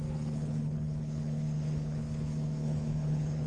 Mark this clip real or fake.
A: fake